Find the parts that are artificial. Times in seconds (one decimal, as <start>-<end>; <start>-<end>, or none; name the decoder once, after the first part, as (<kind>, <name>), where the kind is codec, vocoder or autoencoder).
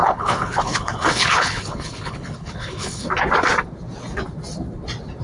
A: 0.0-3.1 (codec, HILCodec)